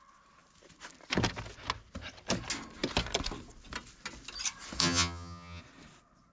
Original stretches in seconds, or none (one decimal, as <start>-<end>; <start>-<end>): 0.0-4.8; 5.6-6.3